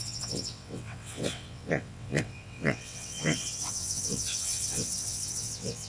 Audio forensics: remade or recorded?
remade